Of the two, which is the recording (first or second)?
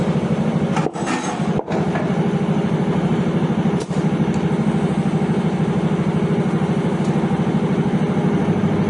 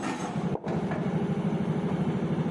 first